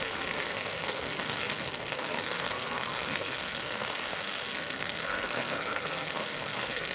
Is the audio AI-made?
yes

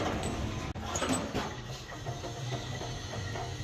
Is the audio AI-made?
no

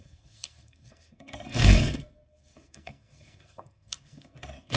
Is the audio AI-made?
yes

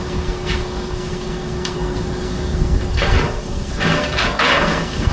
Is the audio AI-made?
yes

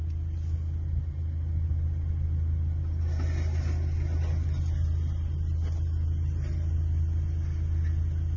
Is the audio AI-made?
no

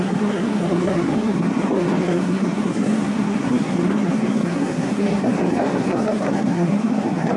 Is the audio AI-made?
yes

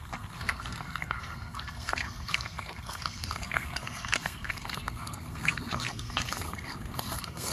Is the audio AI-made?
yes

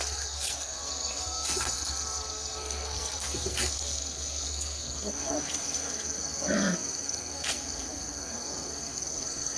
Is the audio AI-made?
yes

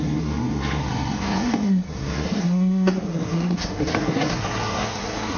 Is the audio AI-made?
yes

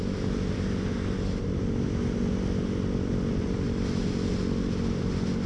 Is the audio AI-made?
no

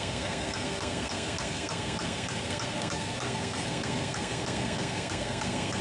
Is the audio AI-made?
yes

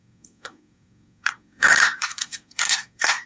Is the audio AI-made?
yes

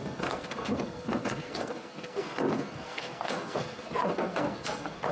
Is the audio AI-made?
yes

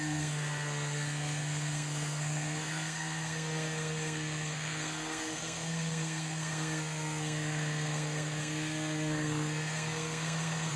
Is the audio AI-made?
yes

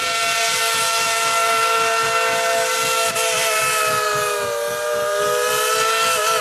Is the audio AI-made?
no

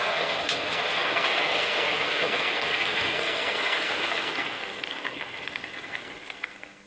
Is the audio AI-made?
yes